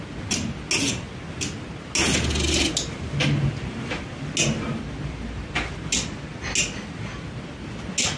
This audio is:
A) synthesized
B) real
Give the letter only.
B